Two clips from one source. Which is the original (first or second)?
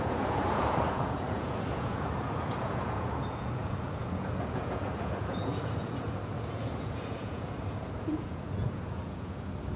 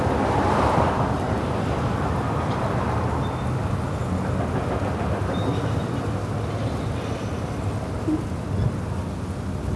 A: second